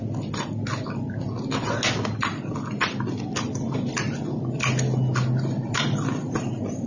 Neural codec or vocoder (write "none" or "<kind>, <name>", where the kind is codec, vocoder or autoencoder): none